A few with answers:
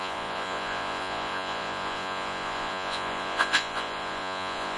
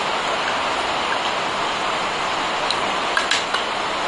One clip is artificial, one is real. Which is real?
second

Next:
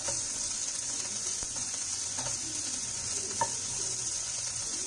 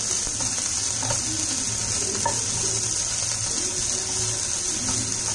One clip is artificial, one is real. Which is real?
second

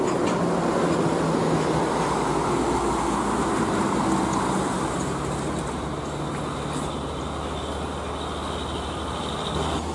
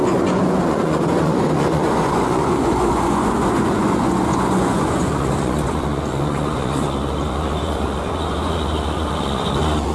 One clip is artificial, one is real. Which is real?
first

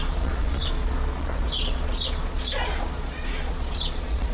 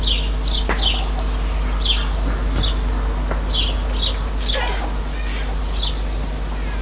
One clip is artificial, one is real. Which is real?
second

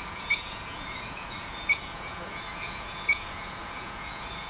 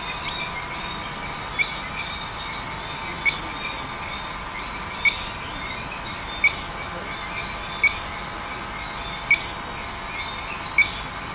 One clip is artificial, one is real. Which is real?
second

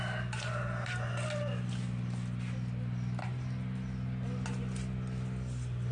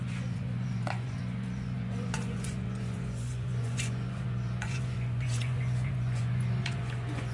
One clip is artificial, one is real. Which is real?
first